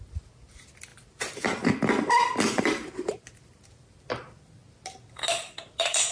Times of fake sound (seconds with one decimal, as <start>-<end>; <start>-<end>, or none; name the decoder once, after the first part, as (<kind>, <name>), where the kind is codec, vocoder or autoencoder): 0.9-4.6 (vocoder, BigVGAN v2)

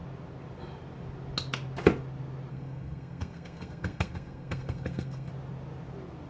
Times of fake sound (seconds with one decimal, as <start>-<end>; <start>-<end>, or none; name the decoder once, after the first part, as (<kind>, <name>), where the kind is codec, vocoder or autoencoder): 2.5-5.3 (codec, SNAC)

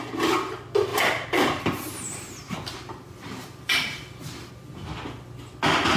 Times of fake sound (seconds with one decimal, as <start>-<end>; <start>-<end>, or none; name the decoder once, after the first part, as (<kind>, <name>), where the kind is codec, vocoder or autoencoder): 0.9-4.5 (vocoder, BigVGAN v2)